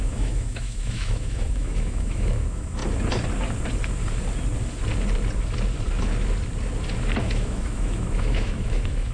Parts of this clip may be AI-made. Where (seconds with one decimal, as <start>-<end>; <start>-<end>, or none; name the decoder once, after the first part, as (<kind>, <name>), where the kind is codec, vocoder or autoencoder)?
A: 0.0-2.8 (autoencoder, DAC-VAE); 7.2-9.1